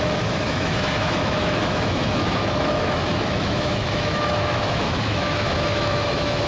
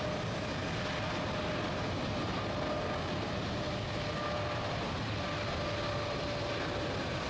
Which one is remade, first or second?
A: first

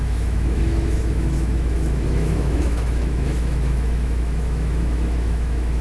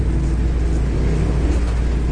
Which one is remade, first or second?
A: first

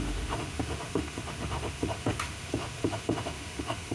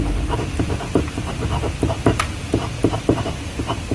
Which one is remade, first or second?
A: first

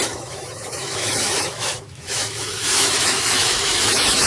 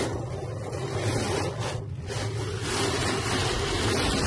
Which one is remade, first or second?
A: first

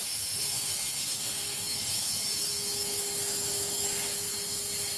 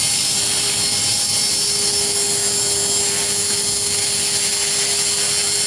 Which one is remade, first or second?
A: first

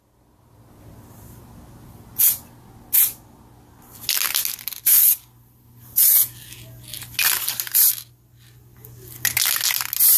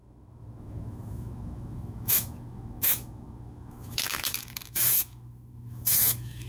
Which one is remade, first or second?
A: second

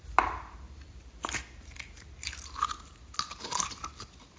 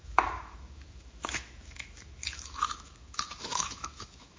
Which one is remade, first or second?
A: second